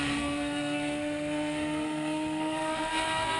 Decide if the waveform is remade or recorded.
remade